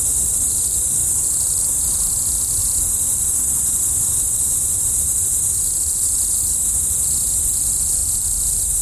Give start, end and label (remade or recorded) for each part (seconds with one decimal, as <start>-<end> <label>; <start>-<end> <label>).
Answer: 0.0-2.6 remade; 2.6-4.2 recorded; 4.2-8.8 remade

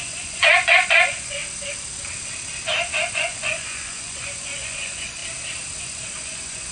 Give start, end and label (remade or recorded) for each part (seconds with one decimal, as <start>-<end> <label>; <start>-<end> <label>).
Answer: 0.0-1.4 remade; 1.4-3.1 recorded; 3.1-5.2 remade; 5.2-5.8 recorded; 5.8-6.7 remade

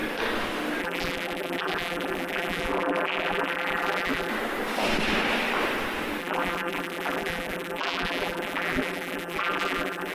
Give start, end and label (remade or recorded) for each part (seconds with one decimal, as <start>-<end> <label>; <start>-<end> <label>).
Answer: 0.0-0.8 recorded; 0.8-4.3 remade; 4.3-6.2 recorded; 6.2-10.1 remade